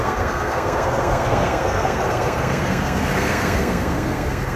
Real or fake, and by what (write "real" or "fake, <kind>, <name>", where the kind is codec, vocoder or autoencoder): fake, codec, SNAC